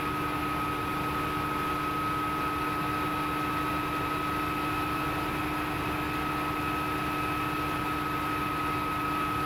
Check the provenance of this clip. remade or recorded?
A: recorded